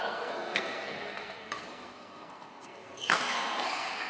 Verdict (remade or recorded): remade